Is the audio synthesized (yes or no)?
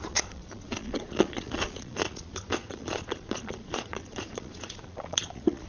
yes